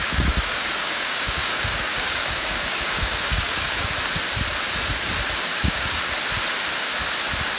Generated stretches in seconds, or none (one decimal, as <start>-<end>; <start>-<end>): 0.0-3.9; 5.5-6.1